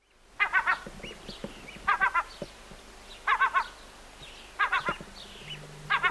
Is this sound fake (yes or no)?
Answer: no